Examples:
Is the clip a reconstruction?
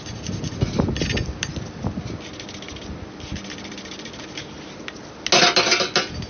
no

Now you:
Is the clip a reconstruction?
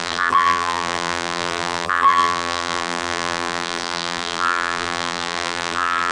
yes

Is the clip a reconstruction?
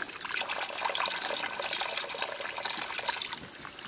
no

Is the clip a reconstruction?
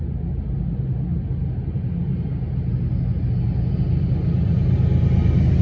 no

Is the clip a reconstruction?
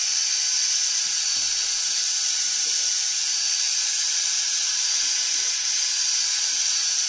no